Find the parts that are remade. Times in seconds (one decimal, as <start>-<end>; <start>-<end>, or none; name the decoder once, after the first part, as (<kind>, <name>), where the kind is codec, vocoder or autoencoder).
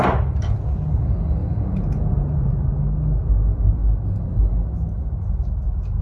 1.4-2.5 (vocoder, Vocos)